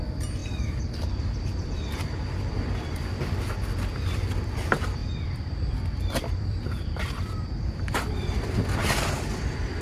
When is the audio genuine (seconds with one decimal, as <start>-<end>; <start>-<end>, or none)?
0.0-0.4; 2.5-5.0